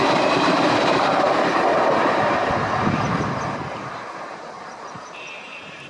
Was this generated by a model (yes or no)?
yes